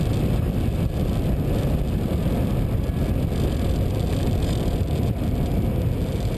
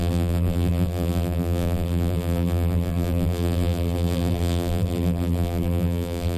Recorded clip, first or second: first